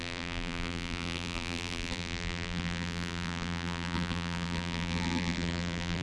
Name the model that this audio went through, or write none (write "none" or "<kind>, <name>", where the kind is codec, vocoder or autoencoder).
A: vocoder, BigVGAN v2